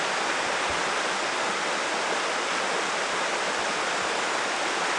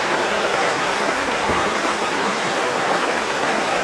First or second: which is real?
first